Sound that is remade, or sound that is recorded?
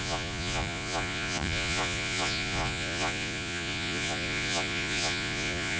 remade